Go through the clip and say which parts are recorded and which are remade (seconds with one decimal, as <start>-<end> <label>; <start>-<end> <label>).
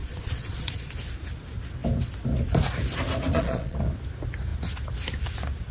0.0-0.9 remade; 0.9-3.3 recorded; 3.3-3.8 remade; 3.8-5.7 recorded